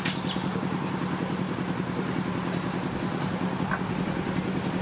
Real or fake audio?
real